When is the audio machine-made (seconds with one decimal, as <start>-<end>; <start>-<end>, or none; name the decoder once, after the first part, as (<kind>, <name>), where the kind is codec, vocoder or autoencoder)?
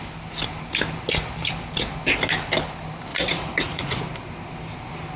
3.1-4.0 (vocoder, Vocos)